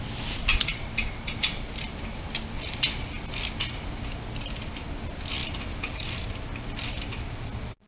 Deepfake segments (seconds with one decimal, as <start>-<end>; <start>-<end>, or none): none